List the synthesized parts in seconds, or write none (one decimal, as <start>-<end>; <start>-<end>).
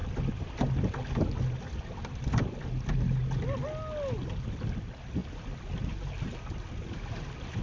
none